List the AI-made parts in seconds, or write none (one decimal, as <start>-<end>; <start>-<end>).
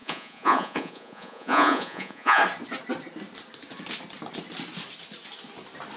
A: 0.0-2.4